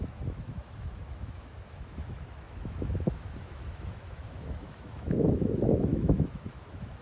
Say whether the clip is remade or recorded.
remade